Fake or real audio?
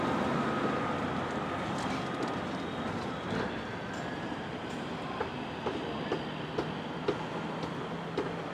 real